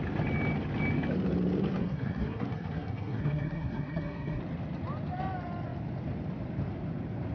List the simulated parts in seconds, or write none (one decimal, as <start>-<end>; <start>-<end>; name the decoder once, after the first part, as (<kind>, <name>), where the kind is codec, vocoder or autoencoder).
1.8-4.4 (codec, SNAC)